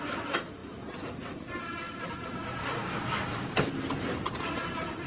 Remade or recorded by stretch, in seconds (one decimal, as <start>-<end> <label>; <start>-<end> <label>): 0.0-2.6 recorded; 2.6-3.7 remade; 3.7-5.1 recorded